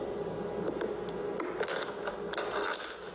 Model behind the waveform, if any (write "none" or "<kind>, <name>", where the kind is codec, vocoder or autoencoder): none